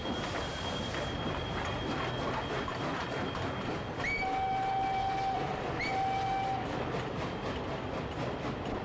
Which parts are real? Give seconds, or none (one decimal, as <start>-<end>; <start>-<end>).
0.0-8.8